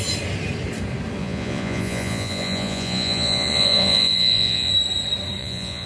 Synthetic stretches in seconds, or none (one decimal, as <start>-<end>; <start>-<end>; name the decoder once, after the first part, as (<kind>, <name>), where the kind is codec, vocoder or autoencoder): 1.2-4.7 (vocoder, Vocos); 5.4-5.9